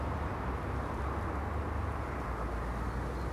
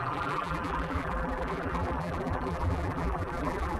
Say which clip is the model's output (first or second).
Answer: second